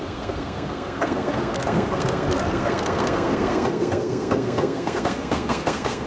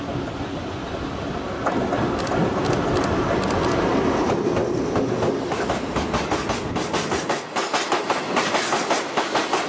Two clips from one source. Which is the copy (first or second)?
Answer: first